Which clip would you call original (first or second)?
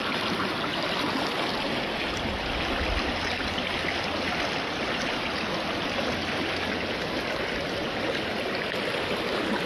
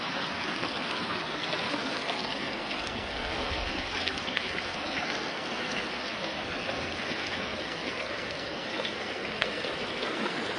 first